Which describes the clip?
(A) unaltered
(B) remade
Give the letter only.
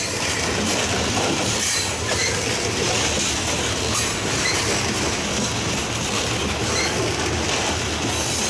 A